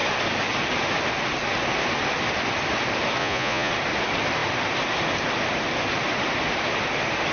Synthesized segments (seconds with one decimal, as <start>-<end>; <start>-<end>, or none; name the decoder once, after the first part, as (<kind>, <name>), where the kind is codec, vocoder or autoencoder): 3.2-3.7 (vocoder, Vocos)